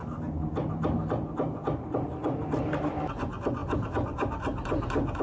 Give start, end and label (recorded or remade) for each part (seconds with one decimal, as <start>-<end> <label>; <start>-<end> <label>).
0.0-3.1 remade; 3.1-3.6 recorded; 3.6-5.2 remade